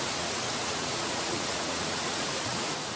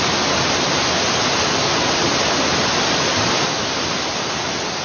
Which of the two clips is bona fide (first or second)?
second